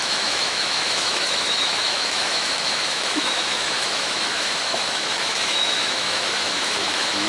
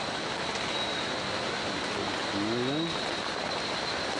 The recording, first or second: second